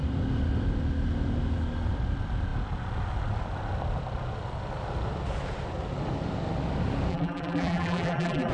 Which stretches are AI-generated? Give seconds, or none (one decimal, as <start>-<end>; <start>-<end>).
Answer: 7.1-8.5